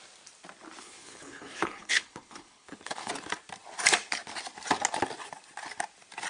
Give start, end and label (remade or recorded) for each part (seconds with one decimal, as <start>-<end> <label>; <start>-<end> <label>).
0.0-0.8 recorded; 0.8-3.1 remade; 3.1-6.3 recorded